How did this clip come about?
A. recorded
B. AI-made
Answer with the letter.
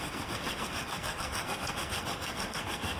B